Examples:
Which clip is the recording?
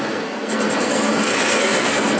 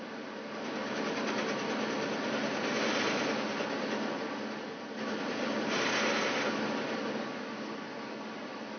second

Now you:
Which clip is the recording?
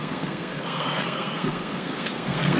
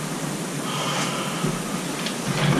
second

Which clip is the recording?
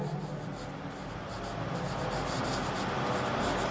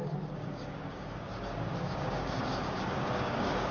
first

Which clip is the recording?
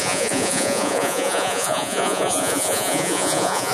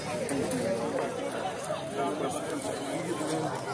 second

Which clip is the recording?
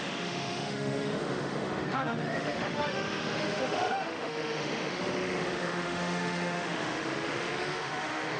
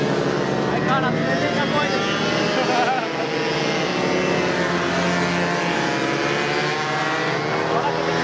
second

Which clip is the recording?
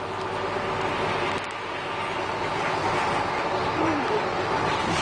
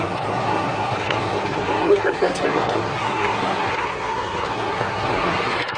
first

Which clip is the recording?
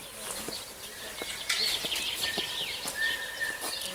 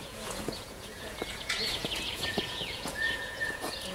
first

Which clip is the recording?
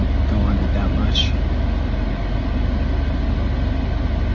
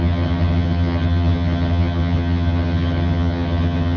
first